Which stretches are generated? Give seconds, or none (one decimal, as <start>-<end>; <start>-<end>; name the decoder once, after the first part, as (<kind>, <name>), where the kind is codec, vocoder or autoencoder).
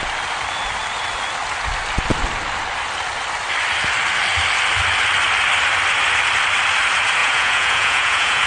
7.2-8.5 (vocoder, Vocos)